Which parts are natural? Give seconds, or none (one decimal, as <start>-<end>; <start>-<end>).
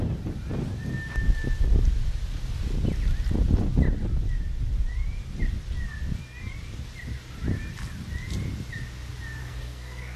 0.0-9.4